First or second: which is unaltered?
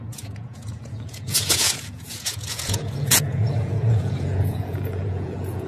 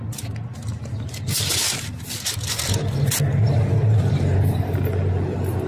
second